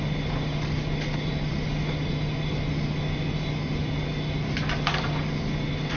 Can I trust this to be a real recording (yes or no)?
yes